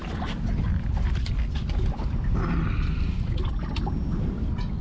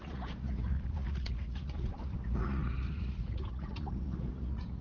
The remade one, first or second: second